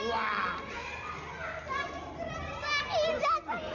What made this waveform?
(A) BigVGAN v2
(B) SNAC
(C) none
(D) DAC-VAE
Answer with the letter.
C